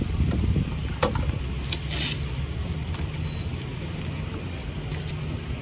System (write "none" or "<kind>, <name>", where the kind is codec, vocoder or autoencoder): none